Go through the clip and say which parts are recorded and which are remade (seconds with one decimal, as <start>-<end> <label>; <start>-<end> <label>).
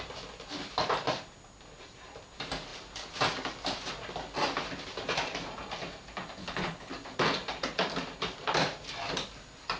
0.0-6.4 recorded; 6.4-6.9 remade; 6.9-9.8 recorded